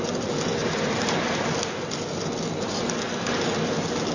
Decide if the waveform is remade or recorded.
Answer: recorded